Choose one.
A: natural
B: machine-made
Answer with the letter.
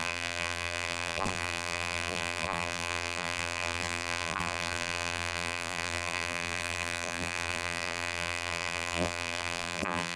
B